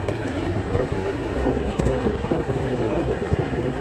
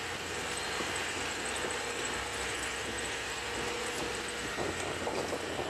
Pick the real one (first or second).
second